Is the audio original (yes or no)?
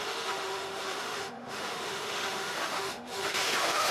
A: no